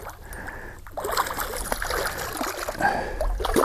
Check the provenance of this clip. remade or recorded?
recorded